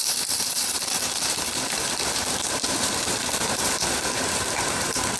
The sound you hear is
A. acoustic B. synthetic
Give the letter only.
B